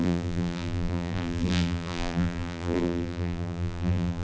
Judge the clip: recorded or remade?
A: remade